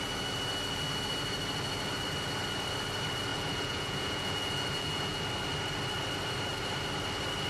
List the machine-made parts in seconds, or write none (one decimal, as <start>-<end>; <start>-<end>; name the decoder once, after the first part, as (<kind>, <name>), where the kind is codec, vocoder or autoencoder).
3.3-5.2 (vocoder, Vocos)